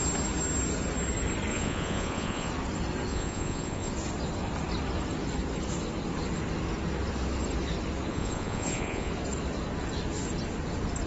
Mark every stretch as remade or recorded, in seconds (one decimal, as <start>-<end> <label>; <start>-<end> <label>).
0.0-1.5 recorded; 1.5-2.5 remade; 2.5-3.1 recorded; 3.1-3.9 remade; 3.9-8.1 recorded; 8.1-9.1 remade; 9.1-11.1 recorded